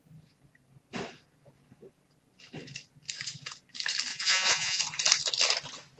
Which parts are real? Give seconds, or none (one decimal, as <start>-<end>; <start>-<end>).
0.0-4.1; 4.8-6.0